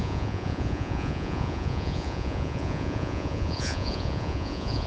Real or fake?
fake